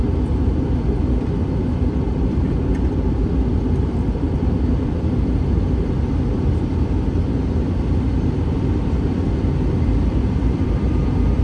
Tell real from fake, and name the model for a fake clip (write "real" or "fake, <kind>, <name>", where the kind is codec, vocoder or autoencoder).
fake, vocoder, BigVGAN v2